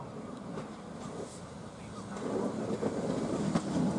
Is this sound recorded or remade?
recorded